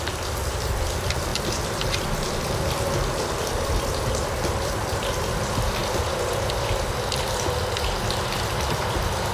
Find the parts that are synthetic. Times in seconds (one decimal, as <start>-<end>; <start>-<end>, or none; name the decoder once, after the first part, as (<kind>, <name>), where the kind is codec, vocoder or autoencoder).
0.0-5.8 (vocoder, BigVGAN v2); 8.6-9.3